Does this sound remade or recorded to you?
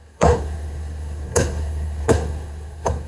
remade